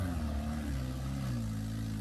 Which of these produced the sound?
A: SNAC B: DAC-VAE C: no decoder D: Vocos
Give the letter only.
C